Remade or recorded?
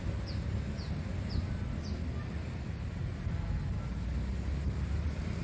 recorded